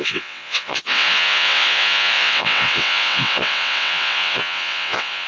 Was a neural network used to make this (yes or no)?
yes